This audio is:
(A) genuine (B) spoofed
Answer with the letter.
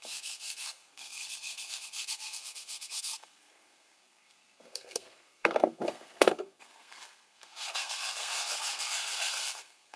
B